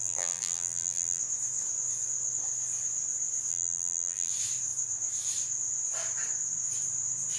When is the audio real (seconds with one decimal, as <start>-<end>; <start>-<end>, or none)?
1.2-3.5; 4.3-7.4